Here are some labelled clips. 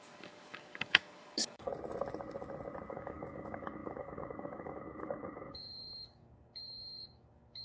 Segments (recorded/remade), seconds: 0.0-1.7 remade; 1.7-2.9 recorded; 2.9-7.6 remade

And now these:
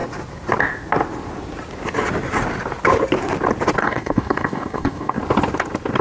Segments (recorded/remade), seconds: 0.0-3.8 recorded; 3.8-5.2 remade; 5.2-6.0 recorded

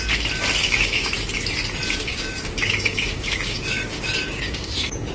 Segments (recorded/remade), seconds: 0.0-0.6 recorded; 0.6-1.1 remade; 1.1-2.1 recorded; 2.1-5.1 remade

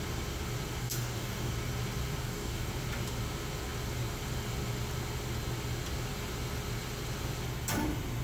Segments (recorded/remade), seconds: 0.0-0.8 recorded; 0.8-1.5 remade; 1.5-2.2 recorded; 2.2-2.7 remade; 2.7-8.2 recorded